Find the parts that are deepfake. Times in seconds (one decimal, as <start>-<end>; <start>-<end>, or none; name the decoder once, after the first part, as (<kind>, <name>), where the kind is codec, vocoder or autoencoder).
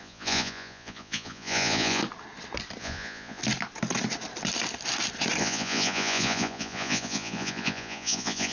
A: 0.0-2.0 (vocoder, Vocos); 2.8-3.4; 5.4-8.5